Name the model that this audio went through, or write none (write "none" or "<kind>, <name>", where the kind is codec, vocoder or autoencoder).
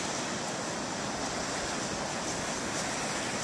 none